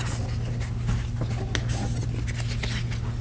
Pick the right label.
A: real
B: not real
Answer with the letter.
A